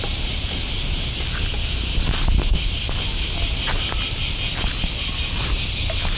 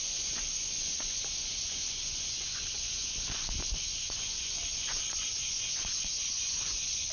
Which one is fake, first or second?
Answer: second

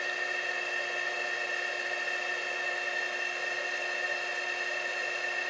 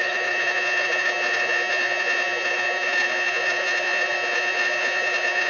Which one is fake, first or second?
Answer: second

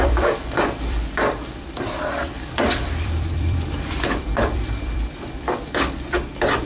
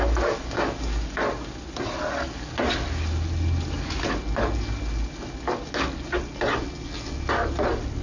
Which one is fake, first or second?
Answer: first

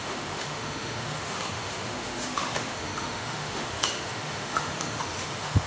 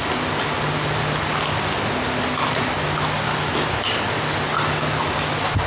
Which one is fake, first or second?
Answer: first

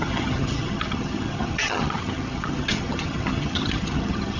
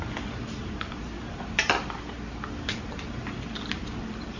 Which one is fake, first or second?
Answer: first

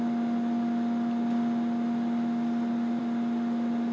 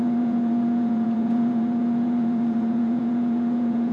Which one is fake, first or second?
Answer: second